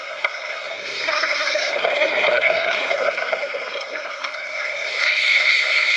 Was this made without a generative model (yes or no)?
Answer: no